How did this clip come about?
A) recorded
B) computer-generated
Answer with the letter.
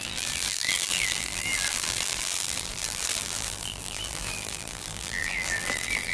B